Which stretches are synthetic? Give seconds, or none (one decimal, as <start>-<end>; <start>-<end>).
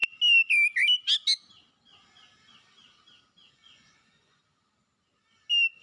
3.5-4.4